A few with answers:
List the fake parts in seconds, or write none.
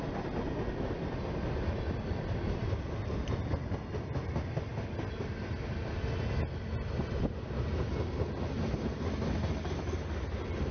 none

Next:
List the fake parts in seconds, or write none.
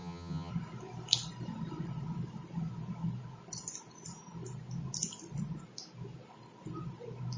0.0-0.5 (vocoder, HiFi-GAN)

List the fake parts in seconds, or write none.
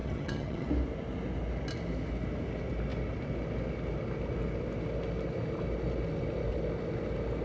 0.0-0.7 (vocoder, HiFi-GAN)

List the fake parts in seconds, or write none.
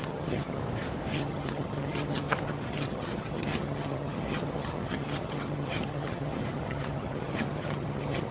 0.0-0.6 (vocoder, HiFi-GAN); 1.1-8.3